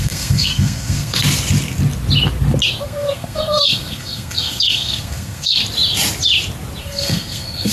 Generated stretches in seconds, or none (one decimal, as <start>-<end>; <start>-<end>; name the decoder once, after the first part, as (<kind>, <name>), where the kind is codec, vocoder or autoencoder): 0.0-1.2 (codec, SNAC); 2.8-5.6; 6.8-7.7

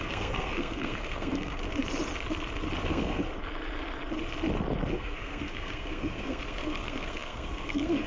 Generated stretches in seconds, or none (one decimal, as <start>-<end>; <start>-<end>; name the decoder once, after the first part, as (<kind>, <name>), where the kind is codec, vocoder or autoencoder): 0.0-1.6 (codec, SNAC); 2.8-3.2; 4.9-8.1

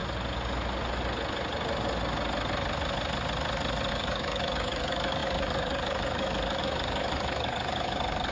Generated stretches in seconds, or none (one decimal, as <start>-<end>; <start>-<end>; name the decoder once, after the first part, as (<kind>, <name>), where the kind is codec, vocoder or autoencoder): 3.9-8.3 (codec, DAC)

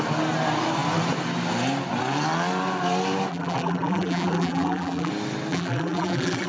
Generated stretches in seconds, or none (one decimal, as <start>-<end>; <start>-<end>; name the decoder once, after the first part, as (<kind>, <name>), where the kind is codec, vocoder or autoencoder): 3.3-5.1 (vocoder, BigVGAN v2); 5.5-6.5